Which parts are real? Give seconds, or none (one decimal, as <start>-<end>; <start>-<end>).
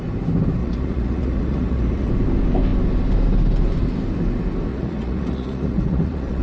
0.0-0.6; 2.1-4.7